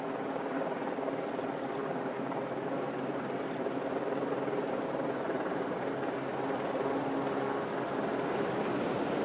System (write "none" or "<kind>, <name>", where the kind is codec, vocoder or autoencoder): none